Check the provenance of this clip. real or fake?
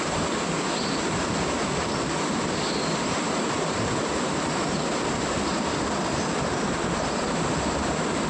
real